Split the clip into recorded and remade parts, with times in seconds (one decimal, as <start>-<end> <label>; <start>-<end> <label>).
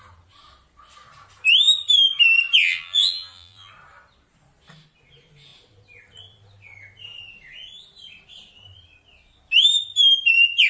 0.0-2.6 recorded; 2.6-3.7 remade; 3.7-10.7 recorded